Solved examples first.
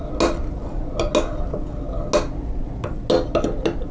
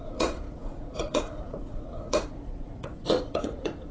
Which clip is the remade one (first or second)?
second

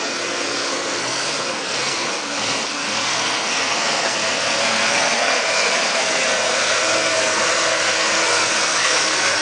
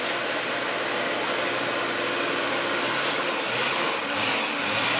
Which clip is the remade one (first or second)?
first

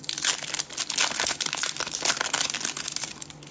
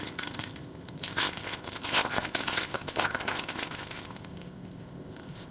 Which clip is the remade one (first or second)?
second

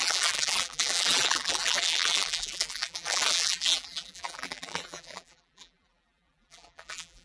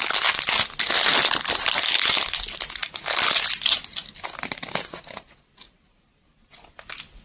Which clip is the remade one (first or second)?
first